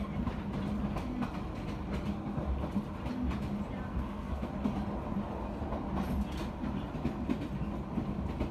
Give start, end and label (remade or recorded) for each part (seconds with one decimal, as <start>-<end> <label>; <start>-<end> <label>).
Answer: 0.0-3.9 recorded; 3.9-4.5 remade; 4.5-8.5 recorded